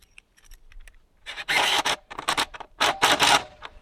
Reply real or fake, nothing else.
fake